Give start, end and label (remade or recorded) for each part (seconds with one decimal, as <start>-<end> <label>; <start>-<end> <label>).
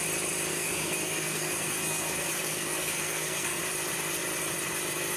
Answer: 0.0-0.5 recorded; 0.5-3.6 remade; 3.6-5.2 recorded